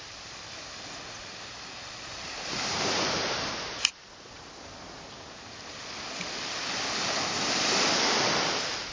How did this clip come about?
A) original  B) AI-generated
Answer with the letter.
A